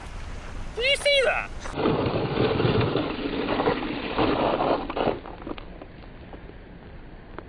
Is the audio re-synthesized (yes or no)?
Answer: no